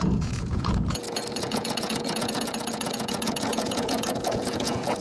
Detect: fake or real fake